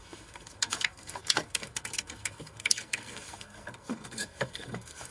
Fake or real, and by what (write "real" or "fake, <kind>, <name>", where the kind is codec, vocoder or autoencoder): fake, codec, SNAC